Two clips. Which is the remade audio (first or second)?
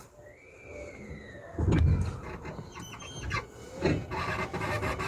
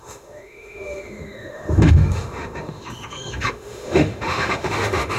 second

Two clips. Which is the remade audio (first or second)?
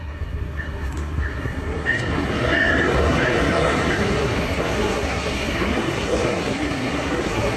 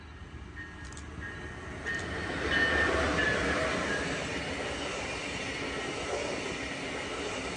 first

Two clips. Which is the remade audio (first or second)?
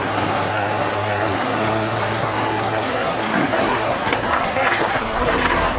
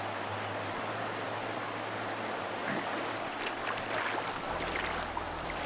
first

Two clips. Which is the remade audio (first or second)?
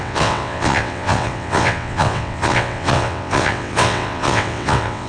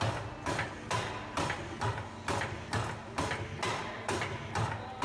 first